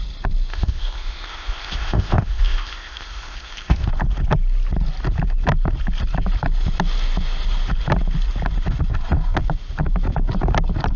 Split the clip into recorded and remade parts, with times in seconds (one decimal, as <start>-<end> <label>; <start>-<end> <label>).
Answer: 0.0-0.5 recorded; 0.5-3.9 remade; 3.9-11.0 recorded